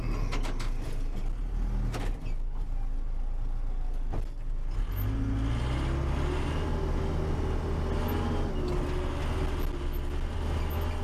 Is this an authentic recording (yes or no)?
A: yes